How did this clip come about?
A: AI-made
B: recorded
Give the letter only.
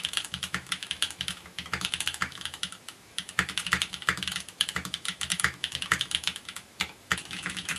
A